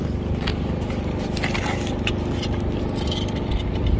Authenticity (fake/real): real